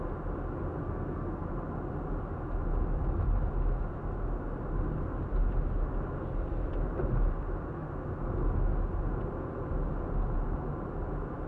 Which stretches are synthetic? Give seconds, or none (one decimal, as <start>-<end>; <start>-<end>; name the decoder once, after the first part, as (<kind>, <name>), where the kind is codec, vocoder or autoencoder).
0.8-1.4 (codec, SNAC)